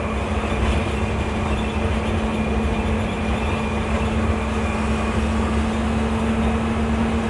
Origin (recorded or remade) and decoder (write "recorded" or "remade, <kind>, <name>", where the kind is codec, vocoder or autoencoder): recorded